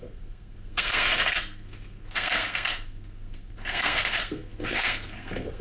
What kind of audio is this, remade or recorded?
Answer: remade